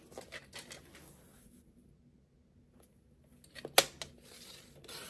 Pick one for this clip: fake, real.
real